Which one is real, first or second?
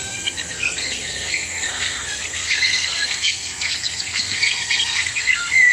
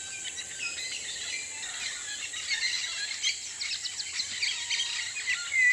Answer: second